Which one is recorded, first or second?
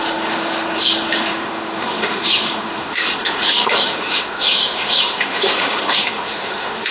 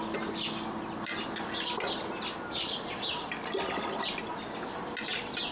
second